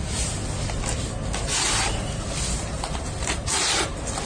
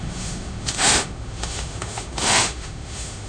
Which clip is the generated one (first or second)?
second